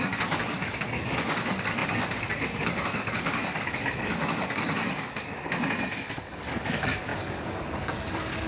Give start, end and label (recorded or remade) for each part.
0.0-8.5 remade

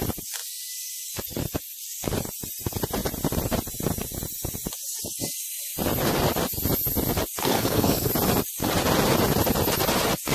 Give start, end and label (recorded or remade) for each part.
0.0-7.4 recorded; 7.4-8.1 remade; 8.1-10.3 recorded